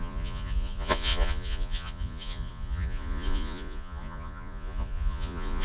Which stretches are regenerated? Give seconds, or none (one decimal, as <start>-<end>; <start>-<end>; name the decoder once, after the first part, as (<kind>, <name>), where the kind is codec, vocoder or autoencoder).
0.0-5.6 (vocoder, Vocos)